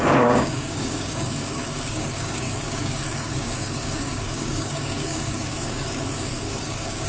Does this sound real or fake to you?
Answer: fake